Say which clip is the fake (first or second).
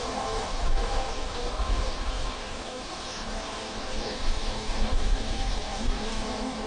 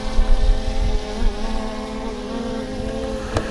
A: first